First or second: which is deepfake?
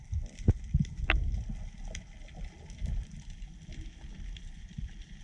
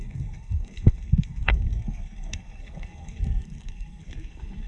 second